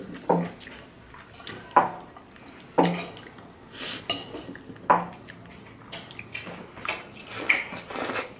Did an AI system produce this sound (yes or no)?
no